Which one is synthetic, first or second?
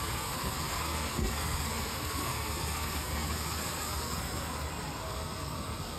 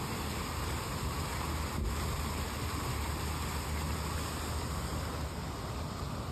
first